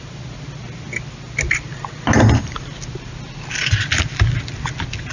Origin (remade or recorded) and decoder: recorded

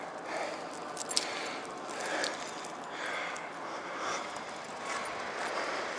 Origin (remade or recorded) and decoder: recorded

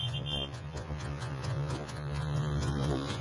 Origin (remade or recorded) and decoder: remade, vocoder, Vocos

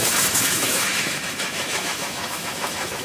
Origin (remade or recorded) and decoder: remade, autoencoder, DAC-VAE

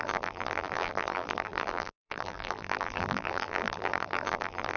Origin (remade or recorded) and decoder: remade, vocoder, BigVGAN v2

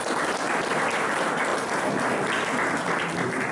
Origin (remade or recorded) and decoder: recorded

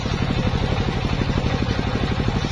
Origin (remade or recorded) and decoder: remade, vocoder, Vocos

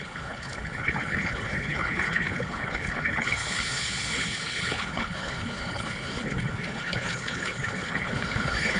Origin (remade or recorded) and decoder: remade, codec, HILCodec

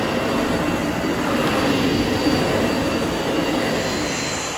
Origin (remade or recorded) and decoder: recorded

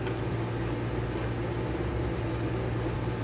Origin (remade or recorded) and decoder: recorded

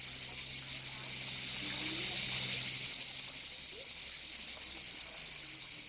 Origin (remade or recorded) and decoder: recorded